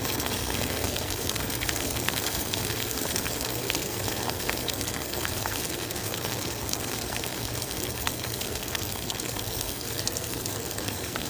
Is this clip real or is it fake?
fake